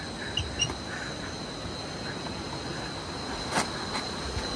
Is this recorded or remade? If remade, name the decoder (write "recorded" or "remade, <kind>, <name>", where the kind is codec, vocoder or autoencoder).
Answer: recorded